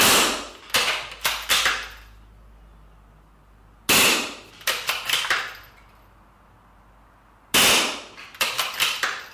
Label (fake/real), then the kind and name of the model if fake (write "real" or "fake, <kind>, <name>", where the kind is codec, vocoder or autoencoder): real